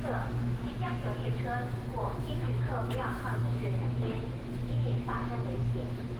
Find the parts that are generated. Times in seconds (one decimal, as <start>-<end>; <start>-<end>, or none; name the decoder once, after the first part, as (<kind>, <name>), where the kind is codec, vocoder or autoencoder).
0.0-1.0 (autoencoder, DAC-VAE); 2.2-5.2